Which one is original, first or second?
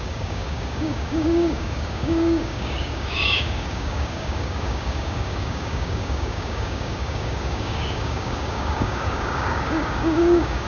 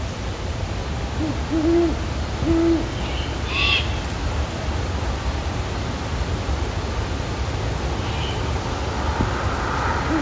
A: second